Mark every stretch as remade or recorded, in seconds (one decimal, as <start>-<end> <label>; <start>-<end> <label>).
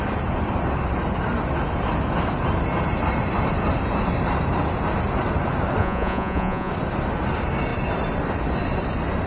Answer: 0.0-5.8 recorded; 5.8-6.7 remade; 6.7-9.3 recorded